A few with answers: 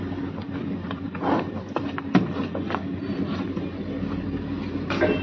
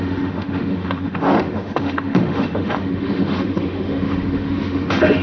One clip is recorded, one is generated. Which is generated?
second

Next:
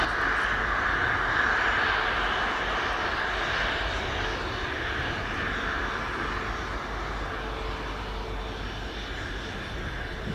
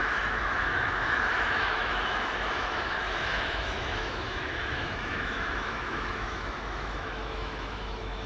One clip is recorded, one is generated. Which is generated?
second